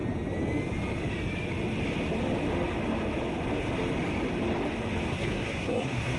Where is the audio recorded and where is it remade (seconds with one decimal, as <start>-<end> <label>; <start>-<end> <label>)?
0.0-5.1 recorded; 5.1-6.2 remade